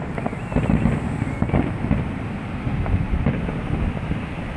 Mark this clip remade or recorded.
recorded